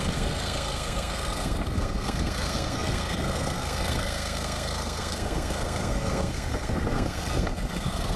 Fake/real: fake